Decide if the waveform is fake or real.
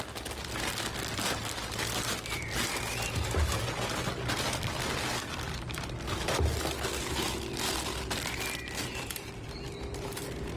real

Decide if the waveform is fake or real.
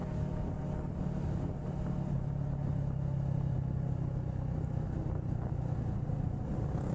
real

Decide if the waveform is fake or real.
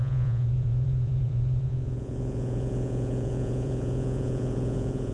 fake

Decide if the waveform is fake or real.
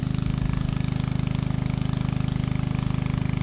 real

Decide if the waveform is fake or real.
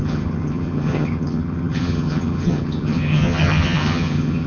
fake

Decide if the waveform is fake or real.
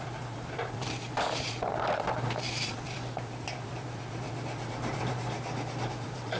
fake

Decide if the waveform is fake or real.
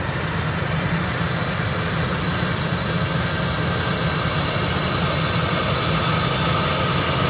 real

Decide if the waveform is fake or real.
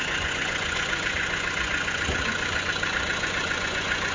fake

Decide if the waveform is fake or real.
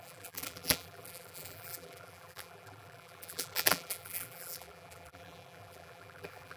fake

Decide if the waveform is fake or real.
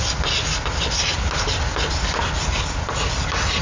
real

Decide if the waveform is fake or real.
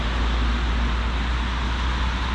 real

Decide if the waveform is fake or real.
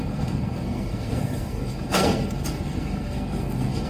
fake